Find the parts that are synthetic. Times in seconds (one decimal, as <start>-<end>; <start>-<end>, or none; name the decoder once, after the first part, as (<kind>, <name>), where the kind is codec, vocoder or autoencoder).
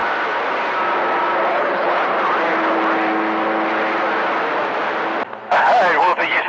1.5-2.1 (codec, HILCodec); 6.0-6.5